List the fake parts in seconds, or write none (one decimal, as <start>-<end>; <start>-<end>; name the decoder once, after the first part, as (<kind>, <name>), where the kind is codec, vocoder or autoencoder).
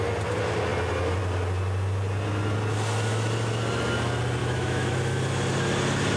4.4-4.9 (autoencoder, DAC-VAE)